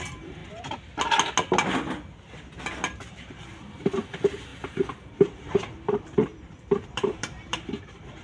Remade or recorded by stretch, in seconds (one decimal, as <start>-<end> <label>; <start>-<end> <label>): 0.0-0.4 remade; 0.4-3.1 recorded; 3.1-8.2 remade